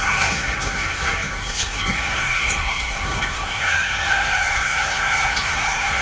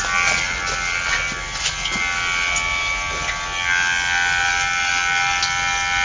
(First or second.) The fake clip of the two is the first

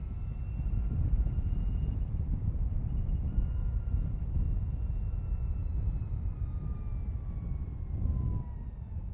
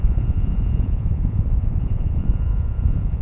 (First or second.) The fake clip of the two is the second